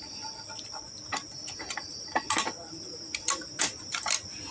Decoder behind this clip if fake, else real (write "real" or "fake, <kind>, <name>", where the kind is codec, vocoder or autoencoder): real